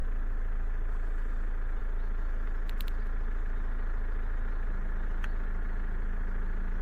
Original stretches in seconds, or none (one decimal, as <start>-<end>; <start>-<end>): 0.0-6.8

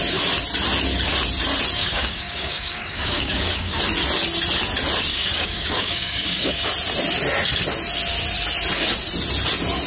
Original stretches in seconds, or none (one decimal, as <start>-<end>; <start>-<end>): 0.0-1.8; 3.8-5.1; 6.7-9.9